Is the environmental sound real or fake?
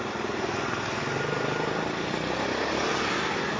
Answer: real